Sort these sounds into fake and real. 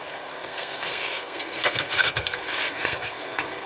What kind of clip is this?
fake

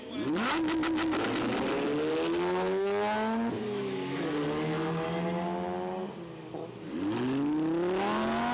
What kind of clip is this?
real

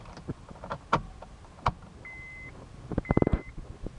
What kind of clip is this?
real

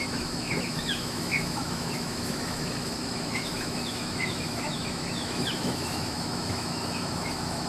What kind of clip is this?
fake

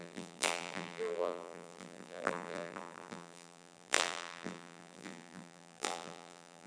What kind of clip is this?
fake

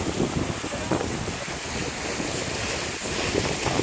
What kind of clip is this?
real